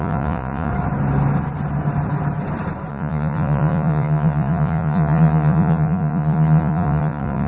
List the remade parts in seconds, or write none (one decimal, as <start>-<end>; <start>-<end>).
0.0-0.7; 2.9-7.5